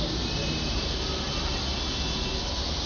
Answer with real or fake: real